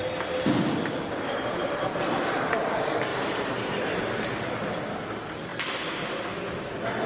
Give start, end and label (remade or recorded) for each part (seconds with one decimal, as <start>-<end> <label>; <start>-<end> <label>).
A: 0.0-1.6 recorded; 1.6-2.3 remade; 2.3-3.1 recorded; 3.1-4.0 remade; 4.0-7.1 recorded